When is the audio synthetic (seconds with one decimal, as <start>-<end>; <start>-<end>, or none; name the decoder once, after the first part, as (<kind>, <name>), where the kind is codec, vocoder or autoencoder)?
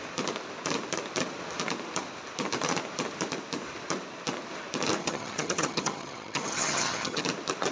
5.0-7.2 (vocoder, HiFi-GAN)